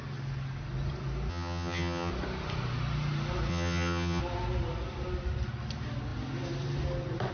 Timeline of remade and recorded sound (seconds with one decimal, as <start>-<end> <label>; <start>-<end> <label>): 0.0-1.3 recorded; 1.3-2.1 remade; 2.1-3.5 recorded; 3.5-4.2 remade; 4.2-7.3 recorded